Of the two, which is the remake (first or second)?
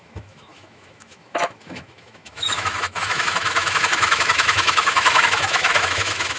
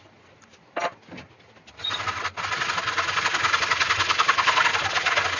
first